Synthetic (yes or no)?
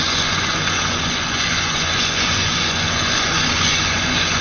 yes